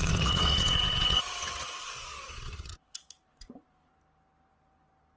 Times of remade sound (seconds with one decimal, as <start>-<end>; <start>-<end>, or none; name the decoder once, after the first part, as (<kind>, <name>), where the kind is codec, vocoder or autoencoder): 0.0-3.1 (vocoder, WaveNeXt)